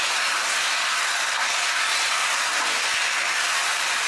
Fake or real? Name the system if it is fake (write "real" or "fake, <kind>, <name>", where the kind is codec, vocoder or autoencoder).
real